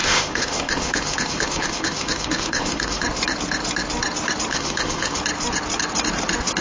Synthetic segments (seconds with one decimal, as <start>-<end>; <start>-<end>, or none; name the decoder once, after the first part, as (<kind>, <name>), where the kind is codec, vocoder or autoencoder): 0.0-3.0 (autoencoder, DAC-VAE); 4.5-5.2